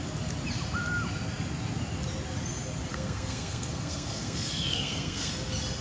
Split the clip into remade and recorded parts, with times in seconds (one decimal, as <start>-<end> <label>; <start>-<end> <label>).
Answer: 0.0-2.9 recorded; 2.9-5.3 remade; 5.3-5.8 recorded